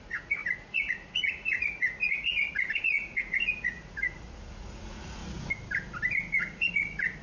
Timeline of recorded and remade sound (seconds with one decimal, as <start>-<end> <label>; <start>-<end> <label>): 0.0-5.2 remade; 5.2-6.3 recorded; 6.3-7.2 remade